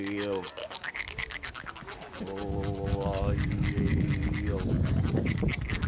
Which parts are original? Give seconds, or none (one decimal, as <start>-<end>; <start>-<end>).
0.0-0.6; 1.7-2.9; 3.8-5.9